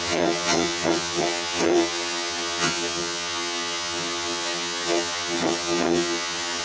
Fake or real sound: fake